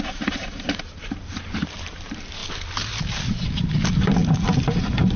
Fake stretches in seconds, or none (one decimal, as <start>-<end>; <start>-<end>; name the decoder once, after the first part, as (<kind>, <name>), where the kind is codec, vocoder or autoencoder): 0.0-2.4 (vocoder, BigVGAN v2); 3.0-5.2